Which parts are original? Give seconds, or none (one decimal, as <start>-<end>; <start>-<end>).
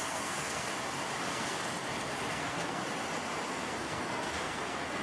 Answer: 0.7-1.2; 1.6-2.3; 2.8-3.5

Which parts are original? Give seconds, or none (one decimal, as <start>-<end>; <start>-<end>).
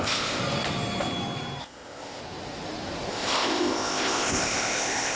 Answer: 0.4-1.6; 2.2-3.1